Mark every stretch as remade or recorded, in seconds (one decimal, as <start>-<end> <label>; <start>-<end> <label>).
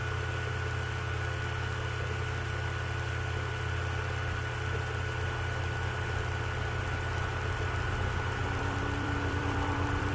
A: 0.0-8.4 recorded; 8.4-10.1 remade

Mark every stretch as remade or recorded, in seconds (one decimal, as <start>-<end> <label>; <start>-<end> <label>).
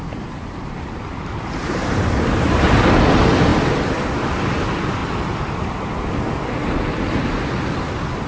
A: 0.0-1.1 recorded; 1.1-3.0 remade; 3.0-3.5 recorded; 3.5-4.4 remade; 4.4-5.0 recorded; 5.0-5.9 remade; 5.9-8.3 recorded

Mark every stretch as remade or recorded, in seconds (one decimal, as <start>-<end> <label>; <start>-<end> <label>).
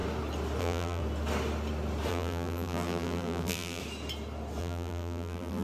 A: 0.0-0.6 recorded; 0.6-1.0 remade; 1.0-2.1 recorded; 2.1-3.8 remade; 3.8-4.6 recorded; 4.6-5.6 remade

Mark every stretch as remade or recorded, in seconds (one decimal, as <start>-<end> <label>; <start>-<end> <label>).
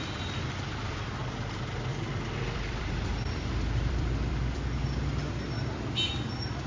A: 0.0-1.9 recorded; 1.9-4.8 remade; 4.8-6.7 recorded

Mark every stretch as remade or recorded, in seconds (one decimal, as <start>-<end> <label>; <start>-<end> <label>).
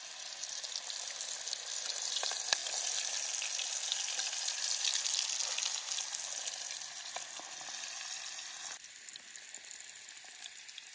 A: 0.0-10.9 recorded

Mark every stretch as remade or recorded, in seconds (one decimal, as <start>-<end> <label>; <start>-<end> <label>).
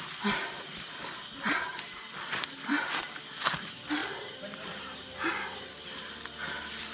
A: 0.0-0.4 recorded; 0.4-1.2 remade; 1.2-1.7 recorded; 1.7-3.0 remade; 3.0-4.0 recorded; 4.0-6.1 remade; 6.1-6.9 recorded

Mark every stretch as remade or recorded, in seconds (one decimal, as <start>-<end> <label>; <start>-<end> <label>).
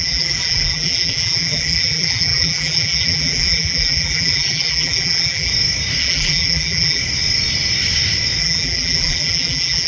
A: 0.0-5.5 remade; 5.5-6.0 recorded; 6.0-7.0 remade; 7.0-8.4 recorded; 8.4-9.9 remade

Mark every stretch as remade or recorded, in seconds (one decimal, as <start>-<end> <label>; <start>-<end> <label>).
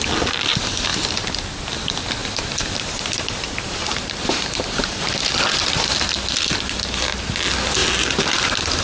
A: 0.0-2.2 recorded; 2.2-5.3 remade; 5.3-8.8 recorded